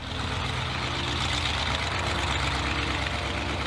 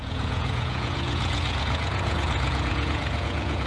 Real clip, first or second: first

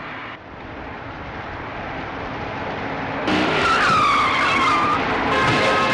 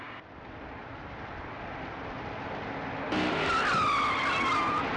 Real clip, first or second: second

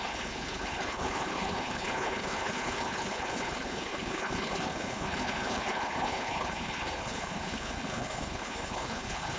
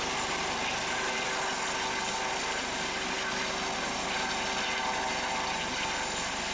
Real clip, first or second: second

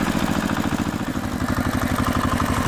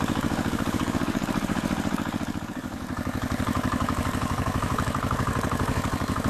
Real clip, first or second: first